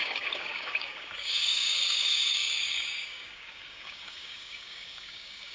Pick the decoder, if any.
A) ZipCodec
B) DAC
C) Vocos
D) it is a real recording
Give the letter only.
B